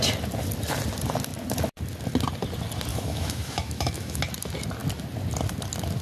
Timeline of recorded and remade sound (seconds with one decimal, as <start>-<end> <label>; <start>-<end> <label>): 0.0-2.9 recorded; 2.9-4.2 remade; 4.2-6.0 recorded